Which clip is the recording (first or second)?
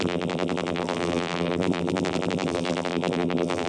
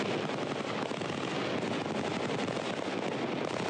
second